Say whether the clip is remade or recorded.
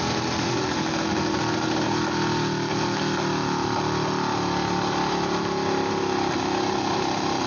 recorded